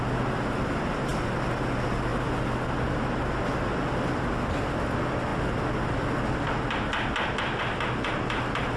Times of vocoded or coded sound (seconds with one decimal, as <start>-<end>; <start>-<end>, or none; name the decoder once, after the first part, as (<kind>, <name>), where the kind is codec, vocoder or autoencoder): none